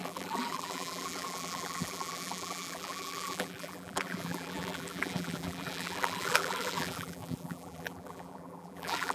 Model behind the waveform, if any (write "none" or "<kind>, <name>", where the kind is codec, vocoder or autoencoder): vocoder, BigVGAN v2